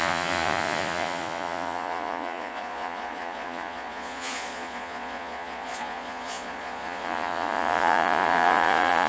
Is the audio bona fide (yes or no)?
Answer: no